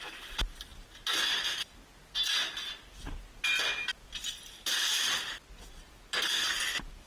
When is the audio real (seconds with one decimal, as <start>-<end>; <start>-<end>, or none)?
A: 0.0-7.1